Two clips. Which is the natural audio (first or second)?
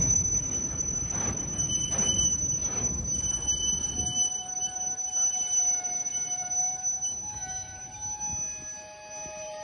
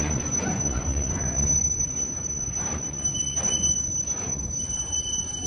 first